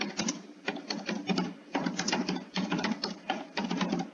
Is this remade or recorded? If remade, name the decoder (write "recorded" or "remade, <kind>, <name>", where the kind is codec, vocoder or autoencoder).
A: remade, vocoder, BigVGAN v2